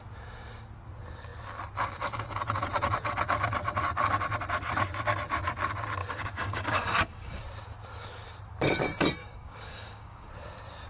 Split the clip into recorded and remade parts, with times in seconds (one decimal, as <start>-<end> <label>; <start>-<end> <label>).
0.0-6.0 recorded; 6.0-7.4 remade; 7.4-9.2 recorded; 9.2-10.3 remade; 10.3-10.9 recorded